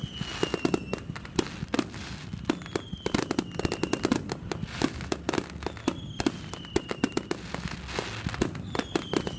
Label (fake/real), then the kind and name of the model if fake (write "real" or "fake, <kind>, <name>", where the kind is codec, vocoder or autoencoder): real